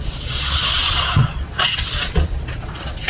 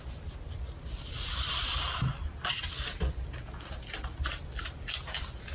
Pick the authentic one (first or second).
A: second